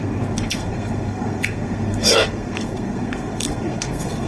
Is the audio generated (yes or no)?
yes